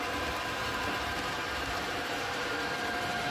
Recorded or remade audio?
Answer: remade